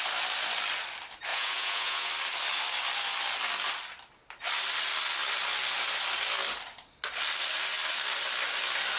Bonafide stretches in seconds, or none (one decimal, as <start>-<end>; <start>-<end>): 0.0-1.3; 2.1-9.0